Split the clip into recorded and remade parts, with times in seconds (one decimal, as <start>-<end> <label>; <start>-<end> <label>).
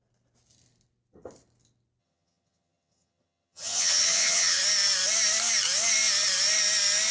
0.0-2.0 recorded; 2.0-4.6 remade; 4.6-7.1 recorded